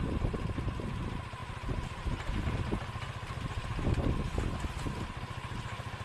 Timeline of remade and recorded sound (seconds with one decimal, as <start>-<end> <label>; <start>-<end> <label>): 0.0-6.0 recorded